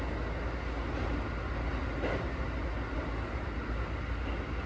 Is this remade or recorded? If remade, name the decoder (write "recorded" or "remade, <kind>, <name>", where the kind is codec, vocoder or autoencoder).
recorded